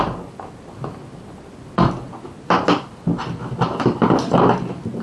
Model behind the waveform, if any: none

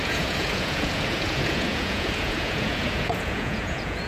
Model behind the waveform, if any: vocoder, Vocos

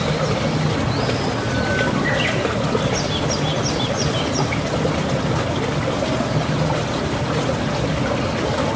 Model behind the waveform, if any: none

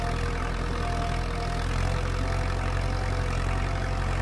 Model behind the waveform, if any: none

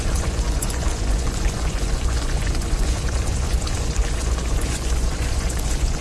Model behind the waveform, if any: vocoder, Vocos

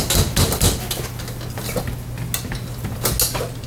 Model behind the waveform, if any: none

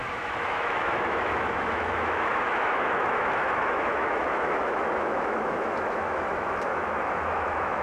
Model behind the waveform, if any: autoencoder, DAC-VAE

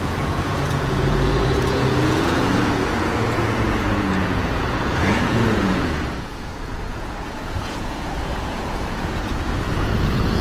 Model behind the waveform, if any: vocoder, Vocos